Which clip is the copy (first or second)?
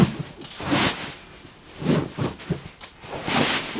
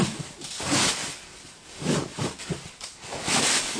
second